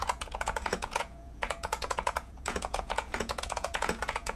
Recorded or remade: remade